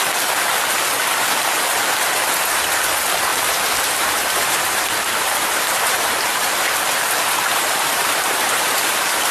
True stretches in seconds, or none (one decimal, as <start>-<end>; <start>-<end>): 0.0-3.3; 7.0-7.5; 8.9-9.3